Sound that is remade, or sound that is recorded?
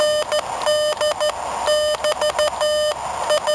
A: recorded